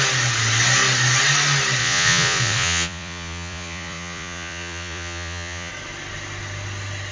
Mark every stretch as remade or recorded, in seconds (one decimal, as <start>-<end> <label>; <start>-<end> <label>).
0.0-1.8 recorded; 1.8-5.7 remade; 5.7-7.1 recorded